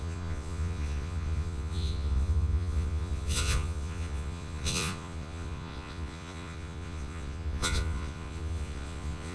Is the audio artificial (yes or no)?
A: yes